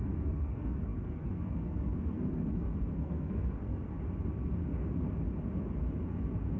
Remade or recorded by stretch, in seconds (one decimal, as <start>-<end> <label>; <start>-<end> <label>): 0.0-3.9 remade; 3.9-6.6 recorded